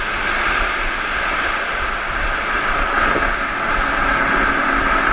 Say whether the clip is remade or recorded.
recorded